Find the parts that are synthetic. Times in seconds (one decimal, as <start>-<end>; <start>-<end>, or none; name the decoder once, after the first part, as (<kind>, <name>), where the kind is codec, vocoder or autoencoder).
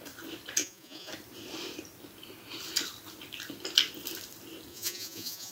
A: 0.6-1.1 (vocoder, Vocos); 4.7-5.5